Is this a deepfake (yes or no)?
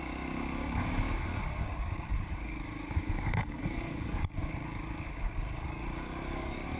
yes